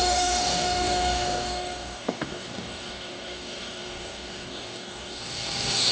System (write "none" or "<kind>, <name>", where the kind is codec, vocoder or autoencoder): codec, DAC